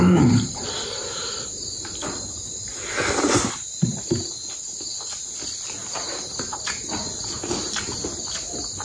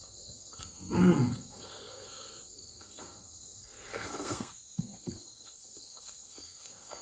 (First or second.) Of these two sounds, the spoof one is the second